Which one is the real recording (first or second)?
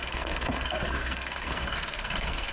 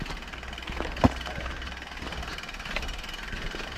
second